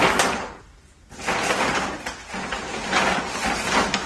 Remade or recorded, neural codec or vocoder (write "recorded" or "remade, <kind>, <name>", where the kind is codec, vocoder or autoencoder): recorded